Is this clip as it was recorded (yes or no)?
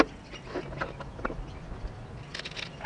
yes